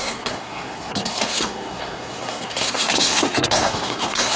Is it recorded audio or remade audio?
remade